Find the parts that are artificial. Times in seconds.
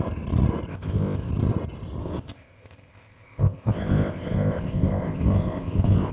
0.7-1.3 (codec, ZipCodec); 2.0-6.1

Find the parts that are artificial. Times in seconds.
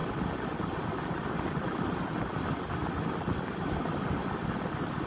none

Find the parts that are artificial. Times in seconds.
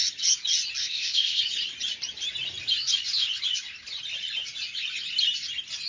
0.8-1.4 (codec, ZipCodec)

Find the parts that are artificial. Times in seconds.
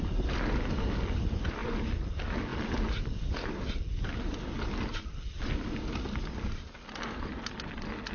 none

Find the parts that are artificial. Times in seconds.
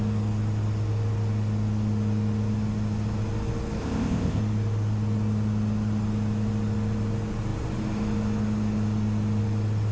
3.8-4.4 (codec, ZipCodec)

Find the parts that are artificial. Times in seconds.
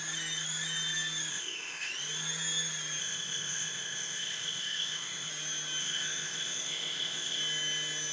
1.3-1.9 (codec, ZipCodec); 3.0-5.3; 5.8-7.4